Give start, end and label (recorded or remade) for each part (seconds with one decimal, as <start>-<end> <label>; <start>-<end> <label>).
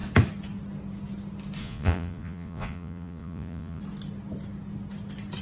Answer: 0.0-1.6 recorded; 1.6-3.8 remade; 3.8-5.4 recorded